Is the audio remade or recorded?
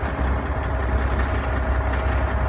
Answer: recorded